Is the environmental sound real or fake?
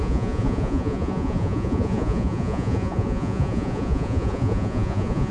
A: fake